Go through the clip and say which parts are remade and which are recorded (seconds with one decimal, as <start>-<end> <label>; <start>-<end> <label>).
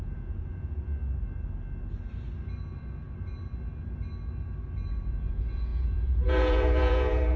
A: 0.0-1.0 remade; 1.0-5.3 recorded; 5.3-7.4 remade